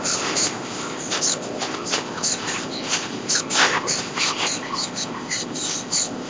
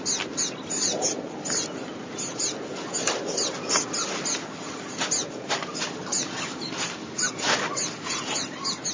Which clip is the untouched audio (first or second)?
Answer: second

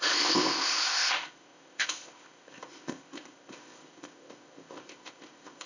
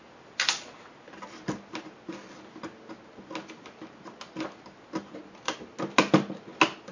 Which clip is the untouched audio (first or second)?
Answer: second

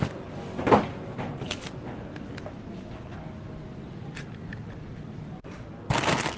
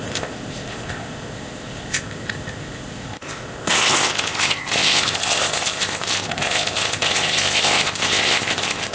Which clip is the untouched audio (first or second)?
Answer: first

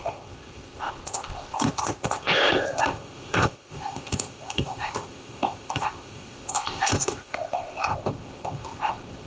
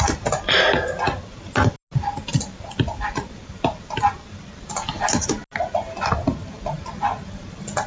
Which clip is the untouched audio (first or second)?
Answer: second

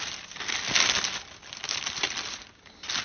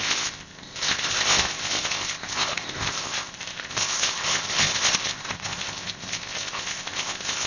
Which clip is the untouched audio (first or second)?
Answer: first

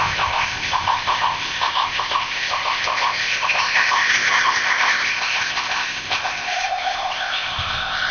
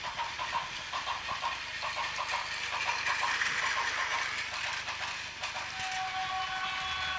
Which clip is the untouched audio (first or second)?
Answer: second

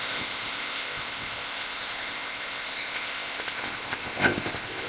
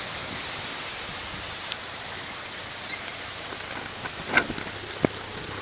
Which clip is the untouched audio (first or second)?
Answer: second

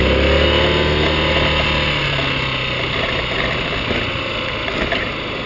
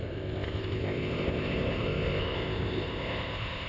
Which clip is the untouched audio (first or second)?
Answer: first